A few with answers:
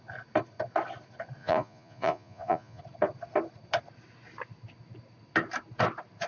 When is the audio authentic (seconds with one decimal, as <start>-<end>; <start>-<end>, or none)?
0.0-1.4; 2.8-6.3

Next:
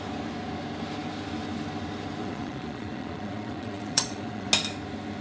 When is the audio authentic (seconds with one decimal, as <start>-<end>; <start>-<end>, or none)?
0.0-2.2; 4.5-5.2

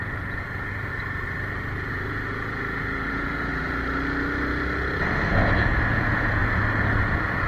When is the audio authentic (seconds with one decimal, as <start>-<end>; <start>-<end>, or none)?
0.9-1.9; 3.5-5.3; 6.4-7.0